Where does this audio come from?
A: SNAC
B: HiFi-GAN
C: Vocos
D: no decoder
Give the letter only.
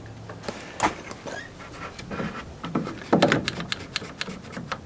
D